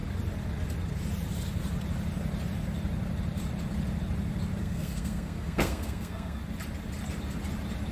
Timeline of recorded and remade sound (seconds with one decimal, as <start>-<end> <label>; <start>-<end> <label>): 0.0-4.6 recorded; 4.6-6.4 remade; 6.4-7.9 recorded